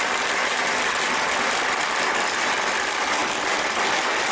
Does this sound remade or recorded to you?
recorded